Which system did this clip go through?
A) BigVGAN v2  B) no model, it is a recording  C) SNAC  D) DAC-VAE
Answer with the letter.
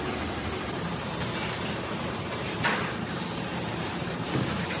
A